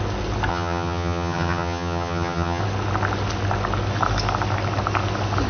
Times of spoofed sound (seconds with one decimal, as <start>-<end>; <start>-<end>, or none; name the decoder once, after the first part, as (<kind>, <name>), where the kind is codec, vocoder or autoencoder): 0.5-2.6 (vocoder, HiFi-GAN)